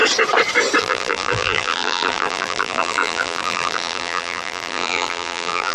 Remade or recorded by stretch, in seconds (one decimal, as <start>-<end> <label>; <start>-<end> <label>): 0.0-0.8 recorded; 0.8-5.7 remade

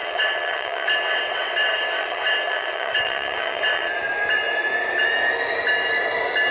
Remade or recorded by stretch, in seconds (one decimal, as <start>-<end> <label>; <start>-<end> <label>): 0.0-3.9 remade; 3.9-6.5 recorded

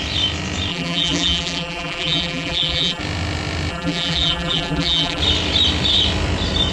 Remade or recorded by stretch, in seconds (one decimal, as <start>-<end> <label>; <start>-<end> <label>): 0.0-0.7 recorded; 0.7-3.0 remade; 3.0-3.7 recorded; 3.7-5.2 remade; 5.2-6.7 recorded

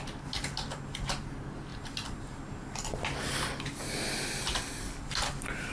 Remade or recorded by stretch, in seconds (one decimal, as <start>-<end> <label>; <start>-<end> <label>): 0.0-5.7 recorded

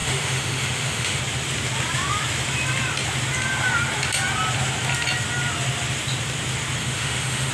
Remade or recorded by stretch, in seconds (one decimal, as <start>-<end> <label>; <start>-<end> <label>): 0.0-1.2 remade; 1.2-6.8 recorded; 6.8-7.5 remade

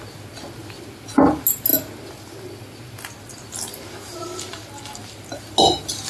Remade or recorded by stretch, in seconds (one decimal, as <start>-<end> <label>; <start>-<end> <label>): 0.0-6.1 recorded

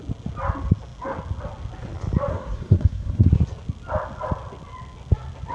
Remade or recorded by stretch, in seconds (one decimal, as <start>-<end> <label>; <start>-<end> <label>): 0.0-2.3 recorded; 2.3-3.3 remade; 3.3-5.5 recorded

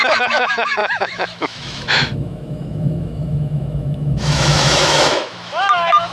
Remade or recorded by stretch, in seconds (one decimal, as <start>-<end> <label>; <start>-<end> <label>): 0.0-6.1 remade